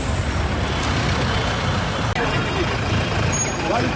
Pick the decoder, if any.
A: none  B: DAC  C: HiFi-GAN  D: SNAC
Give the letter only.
A